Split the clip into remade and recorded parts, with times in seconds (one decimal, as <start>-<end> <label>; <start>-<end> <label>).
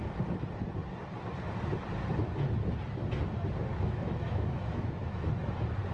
0.0-3.7 recorded; 3.7-5.3 remade; 5.3-5.9 recorded